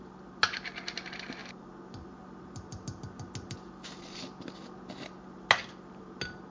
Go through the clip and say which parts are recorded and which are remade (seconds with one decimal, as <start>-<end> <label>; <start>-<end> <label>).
0.0-6.5 recorded